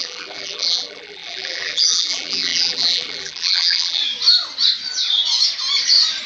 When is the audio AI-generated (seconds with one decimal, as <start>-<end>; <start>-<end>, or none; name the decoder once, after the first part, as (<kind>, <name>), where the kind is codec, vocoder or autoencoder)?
0.0-4.0 (vocoder, BigVGAN v2)